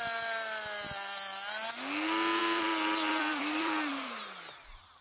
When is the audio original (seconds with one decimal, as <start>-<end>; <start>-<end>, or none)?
0.0-2.4; 4.2-5.0